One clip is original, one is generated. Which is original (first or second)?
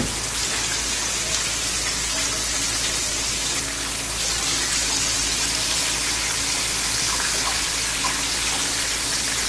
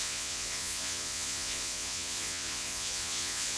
first